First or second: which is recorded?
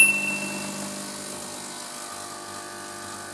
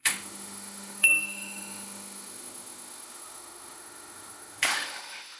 first